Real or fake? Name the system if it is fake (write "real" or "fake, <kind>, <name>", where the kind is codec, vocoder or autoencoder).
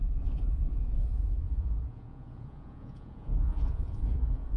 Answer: fake, vocoder, Vocos